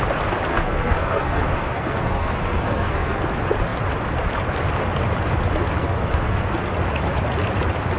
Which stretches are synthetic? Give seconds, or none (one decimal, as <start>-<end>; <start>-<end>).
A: 0.5-3.2; 5.8-6.5